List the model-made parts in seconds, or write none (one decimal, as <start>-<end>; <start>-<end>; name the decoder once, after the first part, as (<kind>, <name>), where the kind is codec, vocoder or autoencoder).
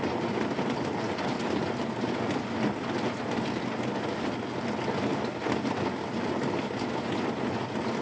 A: none